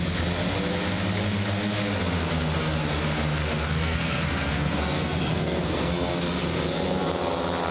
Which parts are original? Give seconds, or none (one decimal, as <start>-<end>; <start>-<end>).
0.0-3.4; 6.4-7.7